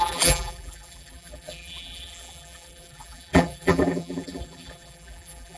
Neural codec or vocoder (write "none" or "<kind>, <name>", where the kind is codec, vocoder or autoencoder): vocoder, BigVGAN v2